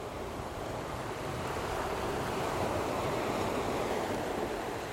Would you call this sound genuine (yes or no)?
no